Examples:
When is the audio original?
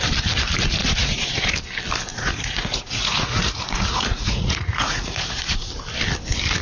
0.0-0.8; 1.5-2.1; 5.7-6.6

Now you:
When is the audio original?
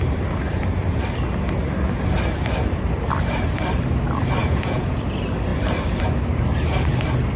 0.0-4.4; 5.0-7.4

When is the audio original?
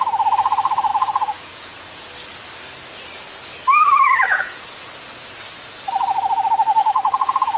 0.0-0.9; 2.0-4.3; 4.9-6.8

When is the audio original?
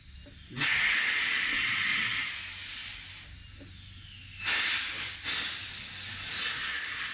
0.0-7.1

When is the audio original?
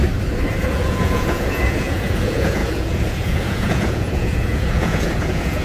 0.0-0.6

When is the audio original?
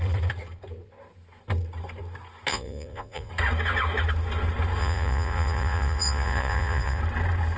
0.0-2.5; 3.3-4.8; 7.0-7.6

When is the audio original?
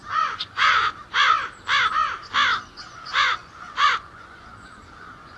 1.2-2.6